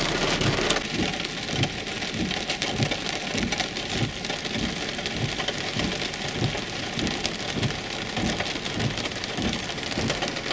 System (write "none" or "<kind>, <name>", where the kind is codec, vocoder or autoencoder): none